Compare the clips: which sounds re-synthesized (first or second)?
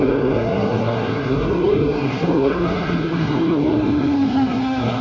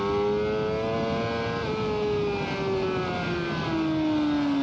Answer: first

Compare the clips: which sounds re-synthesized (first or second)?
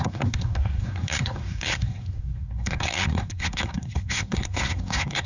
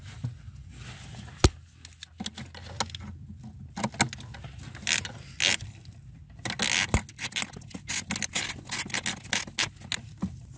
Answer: first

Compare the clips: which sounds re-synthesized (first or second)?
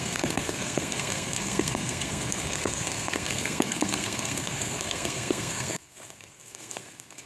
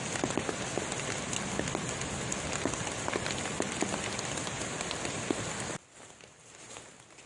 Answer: first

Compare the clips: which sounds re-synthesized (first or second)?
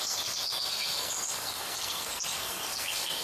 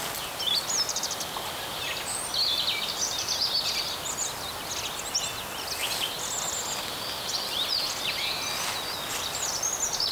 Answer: first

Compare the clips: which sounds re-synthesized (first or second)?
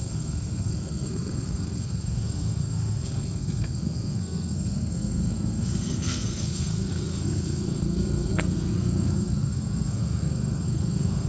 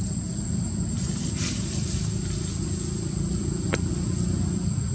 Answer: first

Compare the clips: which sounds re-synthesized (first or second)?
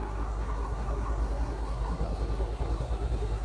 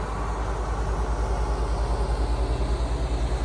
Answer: first